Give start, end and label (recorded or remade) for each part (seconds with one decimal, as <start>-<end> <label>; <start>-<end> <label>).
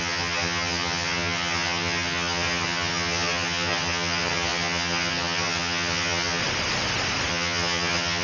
0.0-6.4 remade; 6.4-7.3 recorded; 7.3-8.2 remade